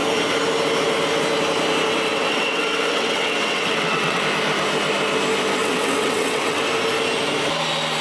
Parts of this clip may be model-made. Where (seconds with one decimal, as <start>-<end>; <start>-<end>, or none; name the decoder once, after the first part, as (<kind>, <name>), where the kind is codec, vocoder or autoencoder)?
2.1-4.2 (vocoder, WaveNeXt); 5.6-6.6